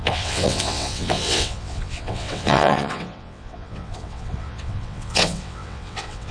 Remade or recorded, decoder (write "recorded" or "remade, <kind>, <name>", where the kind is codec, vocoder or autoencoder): remade, vocoder, WaveNeXt